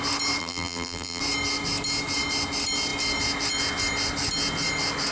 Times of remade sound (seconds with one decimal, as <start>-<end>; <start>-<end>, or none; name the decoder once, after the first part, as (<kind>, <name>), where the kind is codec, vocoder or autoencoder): 0.4-1.2 (vocoder, BigVGAN v2)